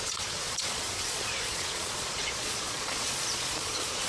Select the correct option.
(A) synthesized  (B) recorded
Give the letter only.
A